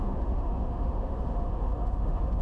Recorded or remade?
remade